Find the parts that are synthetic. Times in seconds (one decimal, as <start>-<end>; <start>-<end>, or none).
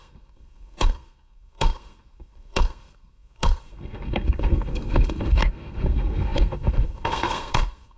0.0-8.0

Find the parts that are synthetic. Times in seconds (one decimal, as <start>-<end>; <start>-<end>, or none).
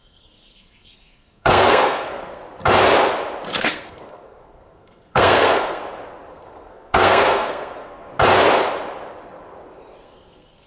0.0-2.4; 3.6-5.8; 6.3-8.1; 10.0-10.7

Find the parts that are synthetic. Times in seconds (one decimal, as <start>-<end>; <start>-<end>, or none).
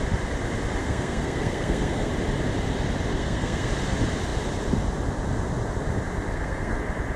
0.8-2.1; 3.1-3.7; 6.3-6.8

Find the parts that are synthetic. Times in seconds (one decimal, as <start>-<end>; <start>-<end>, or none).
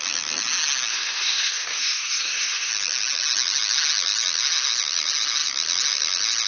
0.9-2.7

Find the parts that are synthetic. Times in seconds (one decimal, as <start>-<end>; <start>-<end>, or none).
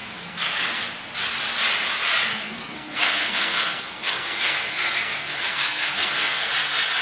0.0-0.9; 2.3-6.5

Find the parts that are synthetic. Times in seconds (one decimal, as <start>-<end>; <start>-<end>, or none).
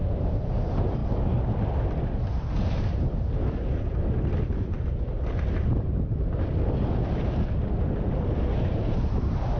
none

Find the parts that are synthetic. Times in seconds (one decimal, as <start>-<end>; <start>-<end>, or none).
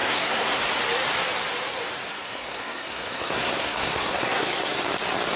0.0-0.6; 2.1-4.8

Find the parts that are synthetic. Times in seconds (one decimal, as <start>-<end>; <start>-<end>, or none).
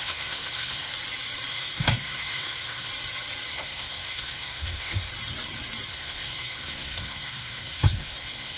0.0-0.9; 1.5-2.9; 3.5-5.1; 5.9-8.6